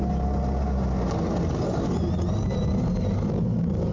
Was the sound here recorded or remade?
recorded